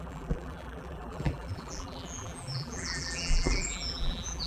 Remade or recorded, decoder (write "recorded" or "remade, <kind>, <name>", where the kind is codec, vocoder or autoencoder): remade, vocoder, BigVGAN v2